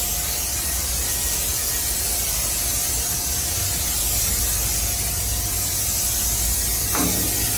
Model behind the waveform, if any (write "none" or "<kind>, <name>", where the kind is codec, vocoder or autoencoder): none